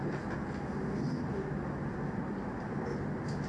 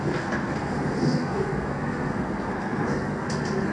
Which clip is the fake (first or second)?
second